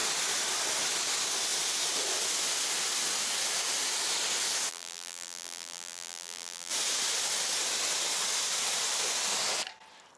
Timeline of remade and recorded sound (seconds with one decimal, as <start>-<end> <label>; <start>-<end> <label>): 0.0-4.7 recorded; 4.7-6.7 remade; 6.7-10.2 recorded